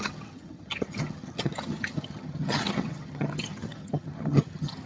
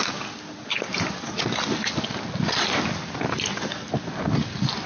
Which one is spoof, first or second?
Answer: first